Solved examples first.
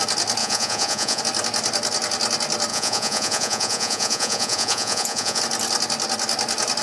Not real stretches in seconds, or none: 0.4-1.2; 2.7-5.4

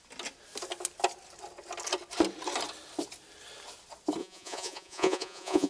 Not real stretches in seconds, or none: 4.2-5.7

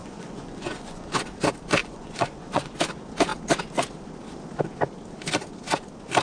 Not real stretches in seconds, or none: 0.0-1.1; 1.8-2.8

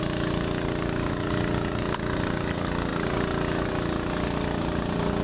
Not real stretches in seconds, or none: none

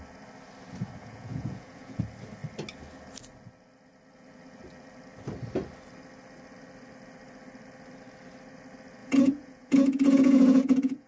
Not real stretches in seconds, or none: 1.0-2.0; 9.0-11.1

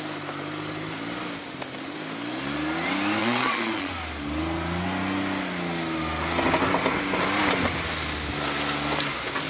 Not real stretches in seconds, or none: 3.2-3.9